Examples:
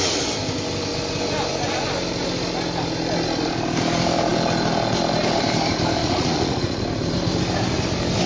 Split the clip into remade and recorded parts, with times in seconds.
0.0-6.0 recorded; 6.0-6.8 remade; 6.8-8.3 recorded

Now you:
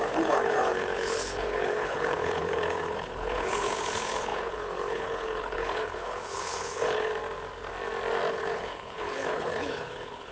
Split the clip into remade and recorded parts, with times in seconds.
0.0-7.1 remade; 7.1-8.3 recorded; 8.3-10.3 remade

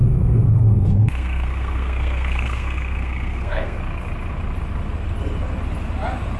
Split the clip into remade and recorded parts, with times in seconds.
0.0-3.8 remade; 3.8-6.4 recorded

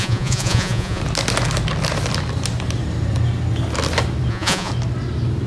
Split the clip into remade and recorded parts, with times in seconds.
0.0-1.0 remade; 1.0-4.3 recorded; 4.3-4.7 remade; 4.7-5.5 recorded